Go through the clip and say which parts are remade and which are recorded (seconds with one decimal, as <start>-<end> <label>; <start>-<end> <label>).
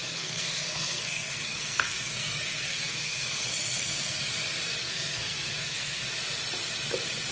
0.0-4.2 remade; 4.2-4.8 recorded; 4.8-6.0 remade; 6.0-7.3 recorded